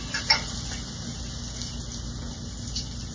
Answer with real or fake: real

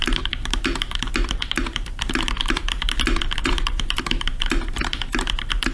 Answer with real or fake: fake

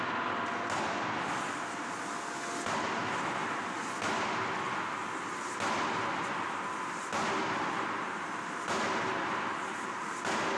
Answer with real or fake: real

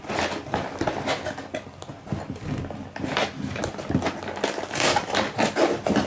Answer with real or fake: real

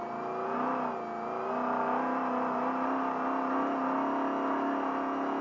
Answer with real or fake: real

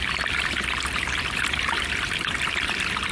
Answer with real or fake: fake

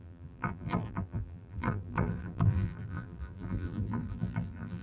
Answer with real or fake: fake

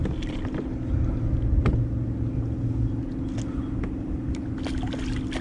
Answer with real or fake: real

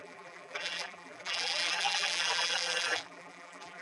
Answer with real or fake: fake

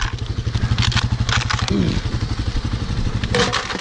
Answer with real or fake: real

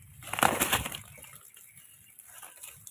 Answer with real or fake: fake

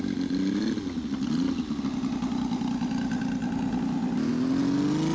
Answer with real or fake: real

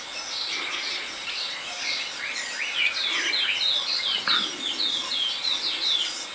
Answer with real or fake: real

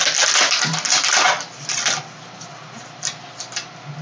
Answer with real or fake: real